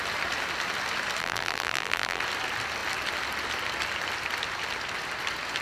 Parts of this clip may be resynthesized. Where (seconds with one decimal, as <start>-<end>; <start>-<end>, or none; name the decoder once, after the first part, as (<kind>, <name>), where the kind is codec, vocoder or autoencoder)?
1.2-2.2 (vocoder, BigVGAN v2)